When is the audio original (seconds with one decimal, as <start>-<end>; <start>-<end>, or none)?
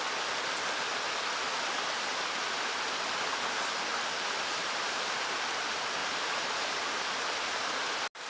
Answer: 0.0-3.9; 5.4-6.0; 7.0-8.3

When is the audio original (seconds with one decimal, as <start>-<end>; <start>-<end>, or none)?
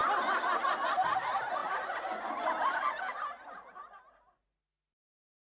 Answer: 0.0-5.5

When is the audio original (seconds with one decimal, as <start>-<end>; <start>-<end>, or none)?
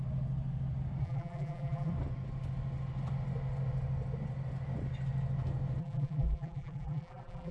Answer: 0.0-1.0; 1.9-5.8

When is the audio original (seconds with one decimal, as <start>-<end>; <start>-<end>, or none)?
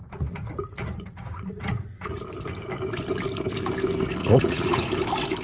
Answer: 2.2-4.2; 4.9-5.4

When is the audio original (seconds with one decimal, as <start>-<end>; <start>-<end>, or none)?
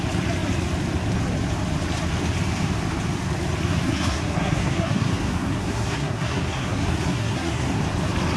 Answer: 0.0-3.7; 7.8-8.4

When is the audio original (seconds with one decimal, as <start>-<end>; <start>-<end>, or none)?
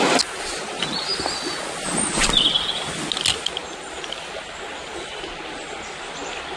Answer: 0.0-3.6; 4.3-6.6